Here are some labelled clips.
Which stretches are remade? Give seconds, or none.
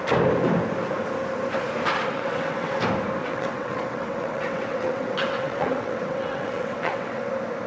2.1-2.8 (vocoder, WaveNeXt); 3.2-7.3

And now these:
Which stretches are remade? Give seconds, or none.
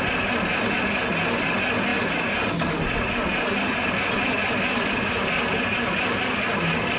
none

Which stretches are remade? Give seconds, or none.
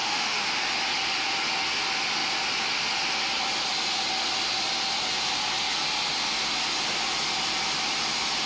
0.0-0.6 (autoencoder, DAC-VAE)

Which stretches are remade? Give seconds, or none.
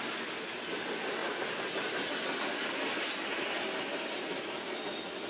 4.3-4.8 (autoencoder, DAC-VAE)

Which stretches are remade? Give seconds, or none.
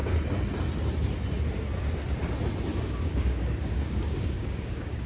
2.7-5.1 (codec, DAC)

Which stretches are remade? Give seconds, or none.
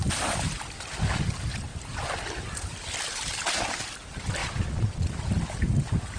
4.4-5.1 (vocoder, Vocos)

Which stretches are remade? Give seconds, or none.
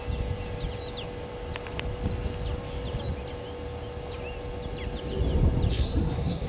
5.7-6.5 (codec, SNAC)